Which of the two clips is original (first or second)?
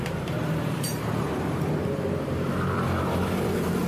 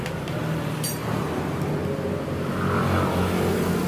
second